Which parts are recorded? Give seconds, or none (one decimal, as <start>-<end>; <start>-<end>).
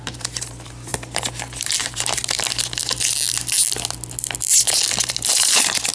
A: 0.9-1.6; 2.2-5.3